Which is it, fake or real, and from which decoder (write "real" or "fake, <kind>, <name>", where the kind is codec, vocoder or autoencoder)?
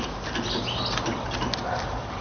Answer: real